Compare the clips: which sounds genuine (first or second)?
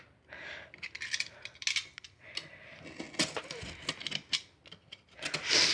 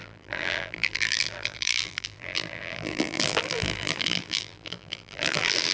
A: first